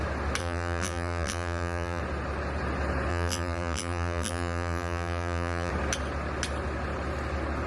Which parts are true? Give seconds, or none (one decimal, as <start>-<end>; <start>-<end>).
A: 0.0-0.4; 2.0-3.1; 5.7-7.7